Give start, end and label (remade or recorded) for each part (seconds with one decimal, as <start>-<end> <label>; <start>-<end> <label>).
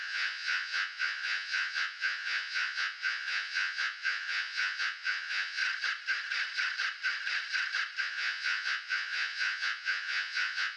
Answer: 0.0-5.6 remade; 5.6-8.0 recorded; 8.0-10.8 remade